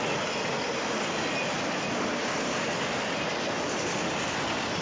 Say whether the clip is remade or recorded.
recorded